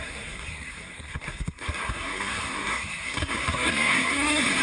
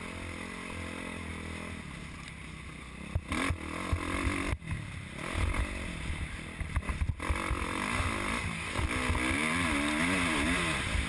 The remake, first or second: first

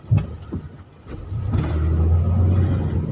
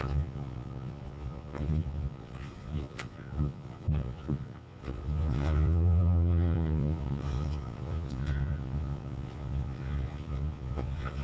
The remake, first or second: second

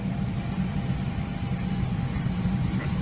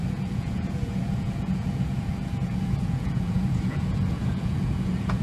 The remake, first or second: second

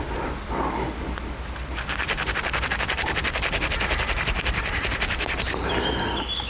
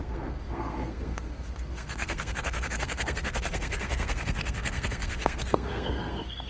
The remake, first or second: second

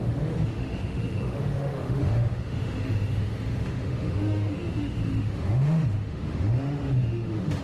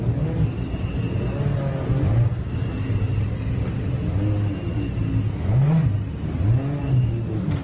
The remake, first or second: first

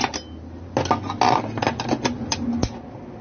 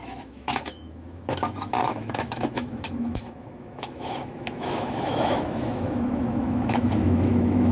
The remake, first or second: second